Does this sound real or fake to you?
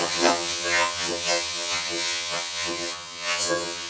fake